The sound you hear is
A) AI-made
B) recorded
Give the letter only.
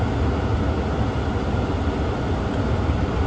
B